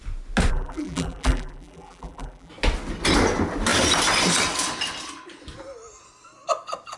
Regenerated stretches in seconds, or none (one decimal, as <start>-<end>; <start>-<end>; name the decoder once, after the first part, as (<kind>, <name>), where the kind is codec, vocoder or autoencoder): 0.5-2.5 (vocoder, BigVGAN v2)

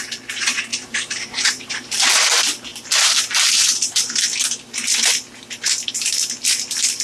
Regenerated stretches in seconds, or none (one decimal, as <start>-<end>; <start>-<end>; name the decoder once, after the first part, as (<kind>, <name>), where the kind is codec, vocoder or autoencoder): 0.7-2.1 (vocoder, BigVGAN v2)

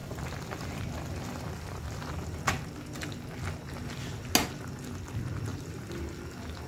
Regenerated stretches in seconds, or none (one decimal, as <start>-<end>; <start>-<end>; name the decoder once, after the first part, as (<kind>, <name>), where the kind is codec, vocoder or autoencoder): 0.0-2.1 (vocoder, BigVGAN v2); 5.5-6.1

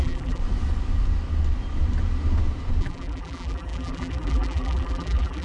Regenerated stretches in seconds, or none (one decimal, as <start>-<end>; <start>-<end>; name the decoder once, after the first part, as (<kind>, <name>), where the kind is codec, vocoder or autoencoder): 0.0-0.4 (vocoder, BigVGAN v2); 2.8-5.4

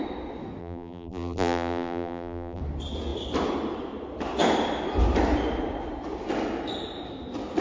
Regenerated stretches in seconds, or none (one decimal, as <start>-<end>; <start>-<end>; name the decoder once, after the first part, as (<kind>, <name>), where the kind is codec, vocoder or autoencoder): 0.6-2.6 (vocoder, BigVGAN v2)

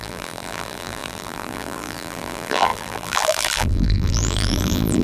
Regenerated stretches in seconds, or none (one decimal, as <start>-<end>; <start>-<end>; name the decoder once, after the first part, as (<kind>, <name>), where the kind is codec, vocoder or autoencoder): 0.0-5.0 (vocoder, BigVGAN v2)

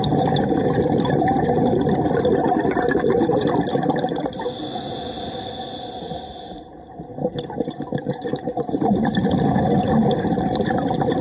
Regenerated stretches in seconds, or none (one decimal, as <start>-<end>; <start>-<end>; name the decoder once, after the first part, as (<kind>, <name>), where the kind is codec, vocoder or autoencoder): 8.3-9.7 (vocoder, BigVGAN v2)

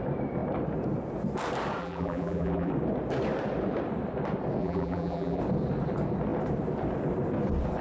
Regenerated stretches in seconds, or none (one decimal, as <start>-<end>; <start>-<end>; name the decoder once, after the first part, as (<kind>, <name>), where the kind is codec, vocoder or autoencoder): 1.8-2.7 (vocoder, BigVGAN v2); 4.6-5.4